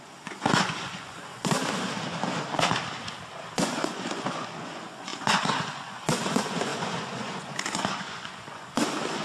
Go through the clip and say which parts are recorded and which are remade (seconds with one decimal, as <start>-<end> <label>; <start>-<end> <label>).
0.0-1.6 remade; 1.6-3.3 recorded; 3.3-9.2 remade